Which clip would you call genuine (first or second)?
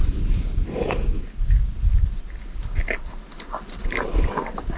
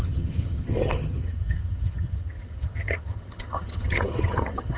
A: first